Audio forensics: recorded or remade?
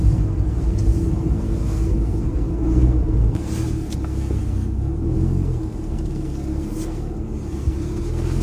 remade